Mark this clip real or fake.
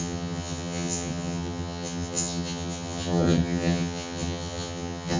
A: fake